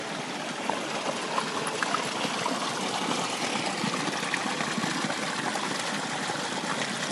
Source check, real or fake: real